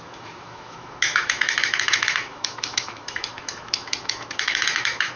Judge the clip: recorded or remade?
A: remade